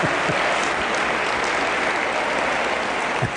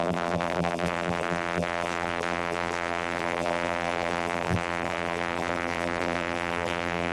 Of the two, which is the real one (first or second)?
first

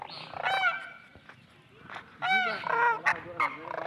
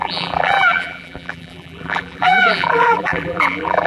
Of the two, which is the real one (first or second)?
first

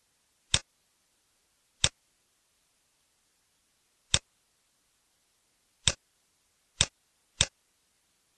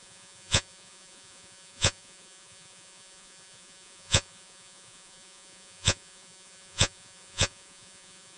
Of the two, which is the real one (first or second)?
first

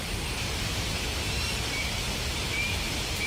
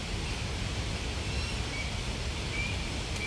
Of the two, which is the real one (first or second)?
second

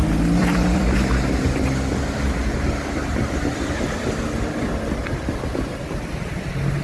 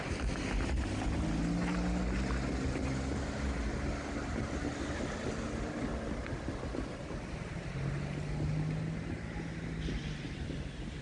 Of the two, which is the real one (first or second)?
second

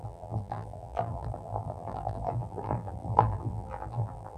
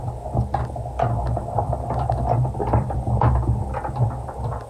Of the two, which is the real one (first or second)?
second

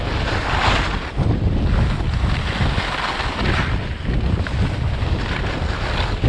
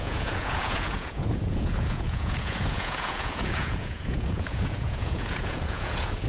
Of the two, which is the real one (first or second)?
first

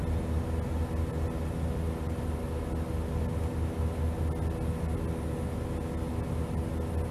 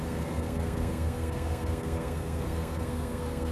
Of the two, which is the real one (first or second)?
first